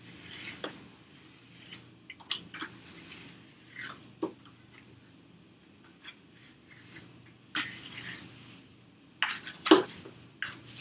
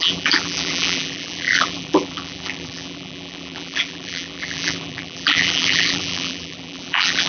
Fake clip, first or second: second